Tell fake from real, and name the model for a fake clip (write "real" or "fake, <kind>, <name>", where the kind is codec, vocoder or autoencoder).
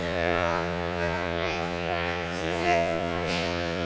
fake, vocoder, Vocos